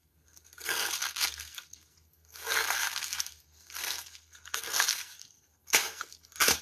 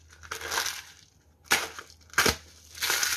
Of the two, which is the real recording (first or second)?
second